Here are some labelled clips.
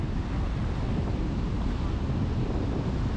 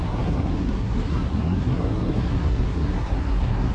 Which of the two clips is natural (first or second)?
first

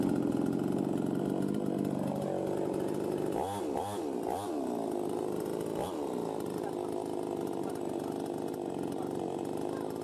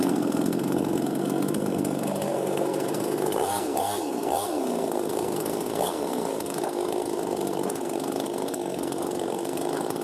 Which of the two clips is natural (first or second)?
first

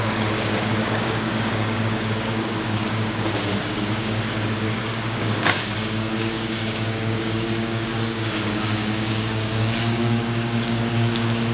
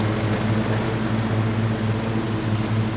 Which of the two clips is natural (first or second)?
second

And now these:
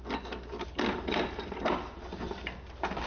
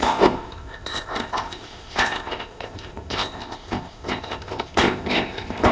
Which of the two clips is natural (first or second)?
first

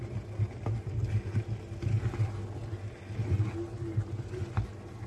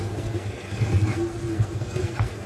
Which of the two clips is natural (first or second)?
first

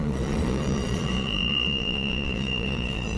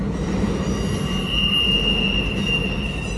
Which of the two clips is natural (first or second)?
second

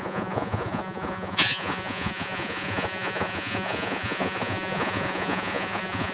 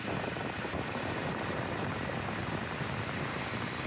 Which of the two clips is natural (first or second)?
second